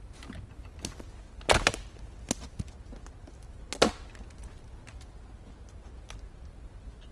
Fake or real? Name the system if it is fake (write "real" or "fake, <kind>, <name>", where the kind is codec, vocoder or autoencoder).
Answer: real